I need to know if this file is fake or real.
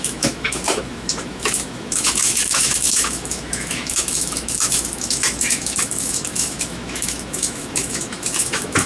fake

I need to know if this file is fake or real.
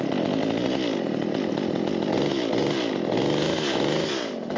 real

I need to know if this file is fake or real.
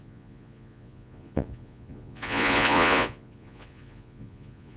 fake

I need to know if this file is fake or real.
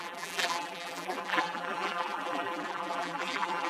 fake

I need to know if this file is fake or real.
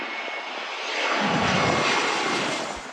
real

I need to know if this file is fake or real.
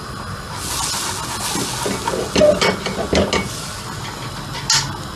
real